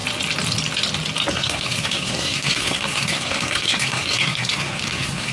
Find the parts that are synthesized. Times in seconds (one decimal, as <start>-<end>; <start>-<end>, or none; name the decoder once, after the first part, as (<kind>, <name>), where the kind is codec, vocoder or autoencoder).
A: 1.3-5.3 (codec, SNAC)